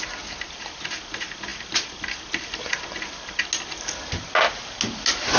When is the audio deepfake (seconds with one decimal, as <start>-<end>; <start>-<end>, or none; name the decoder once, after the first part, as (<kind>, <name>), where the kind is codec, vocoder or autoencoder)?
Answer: none